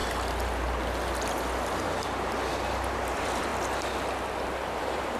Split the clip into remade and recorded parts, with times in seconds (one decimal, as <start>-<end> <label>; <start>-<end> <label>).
0.0-3.1 recorded; 3.1-3.5 remade; 3.5-4.8 recorded; 4.8-5.2 remade